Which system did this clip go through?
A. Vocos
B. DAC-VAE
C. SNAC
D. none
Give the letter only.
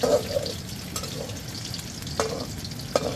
D